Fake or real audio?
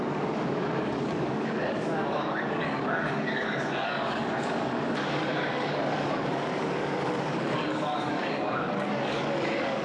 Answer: fake